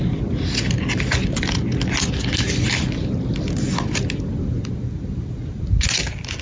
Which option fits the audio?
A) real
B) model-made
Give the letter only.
A